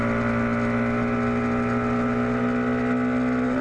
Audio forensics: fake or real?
real